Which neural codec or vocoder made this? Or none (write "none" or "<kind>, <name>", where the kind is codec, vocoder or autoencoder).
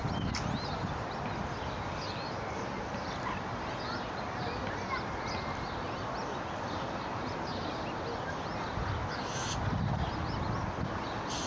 none